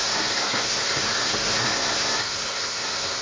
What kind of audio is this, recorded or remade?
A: remade